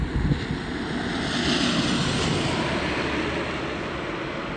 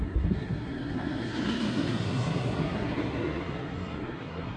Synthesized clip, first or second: second